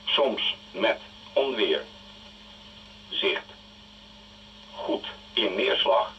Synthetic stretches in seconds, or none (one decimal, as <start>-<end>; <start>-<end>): 0.0-3.3; 4.7-6.2